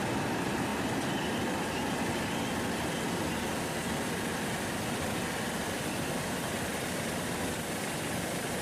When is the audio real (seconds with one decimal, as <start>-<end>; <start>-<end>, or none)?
0.0-8.6